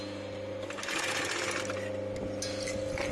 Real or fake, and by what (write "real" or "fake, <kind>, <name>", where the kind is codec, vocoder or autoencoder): real